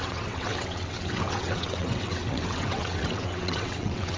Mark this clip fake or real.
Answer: fake